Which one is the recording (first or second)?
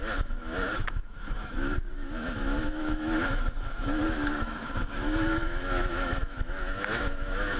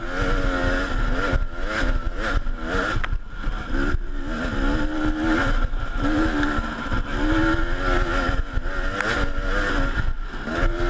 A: second